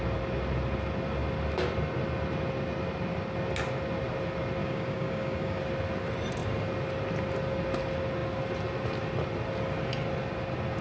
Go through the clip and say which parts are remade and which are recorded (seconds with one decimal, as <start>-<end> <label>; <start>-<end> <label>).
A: 0.0-4.6 recorded; 4.6-5.6 remade; 5.6-10.8 recorded